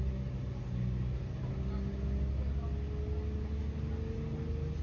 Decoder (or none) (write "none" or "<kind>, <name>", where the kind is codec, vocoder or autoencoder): none